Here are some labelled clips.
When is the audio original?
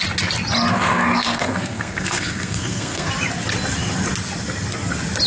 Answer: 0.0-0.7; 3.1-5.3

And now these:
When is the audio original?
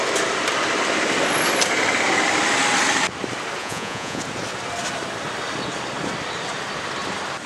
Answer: 0.0-3.6; 4.2-7.5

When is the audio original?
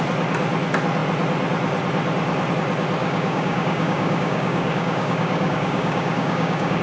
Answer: 0.0-3.0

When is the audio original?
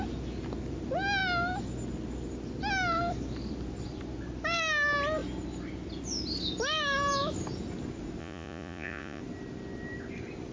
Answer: 0.0-8.2; 9.2-10.5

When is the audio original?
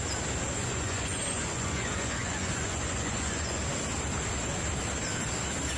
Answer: 0.0-0.6; 3.6-5.8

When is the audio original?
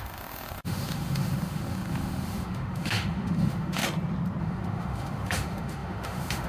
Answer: 3.8-4.4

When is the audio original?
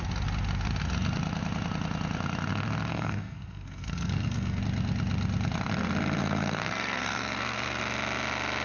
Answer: 0.0-2.9; 4.6-6.2; 7.8-8.6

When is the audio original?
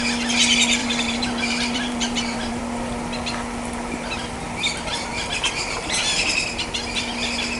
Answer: 0.0-0.8; 2.6-7.6